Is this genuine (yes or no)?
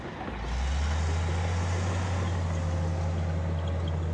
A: yes